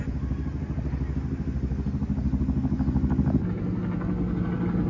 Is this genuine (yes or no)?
yes